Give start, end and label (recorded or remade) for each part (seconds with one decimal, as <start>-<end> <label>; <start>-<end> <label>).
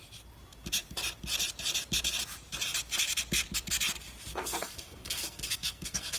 0.0-4.3 recorded; 4.3-6.2 remade